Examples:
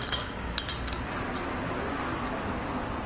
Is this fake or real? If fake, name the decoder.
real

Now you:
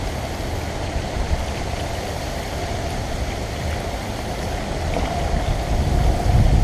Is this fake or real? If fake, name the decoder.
real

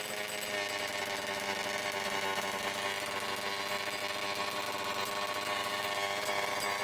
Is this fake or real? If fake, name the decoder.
real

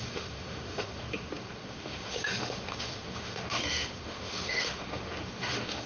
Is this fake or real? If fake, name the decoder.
fake, autoencoder, DAC-VAE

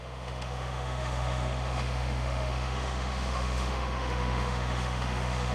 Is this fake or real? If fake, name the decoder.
fake, autoencoder, DAC-VAE